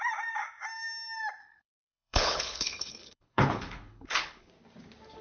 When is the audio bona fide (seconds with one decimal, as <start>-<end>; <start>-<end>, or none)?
0.0-1.4; 4.5-5.2